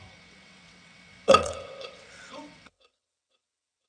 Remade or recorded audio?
remade